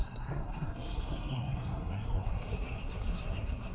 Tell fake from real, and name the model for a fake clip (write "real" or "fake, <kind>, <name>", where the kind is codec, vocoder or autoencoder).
fake, codec, SNAC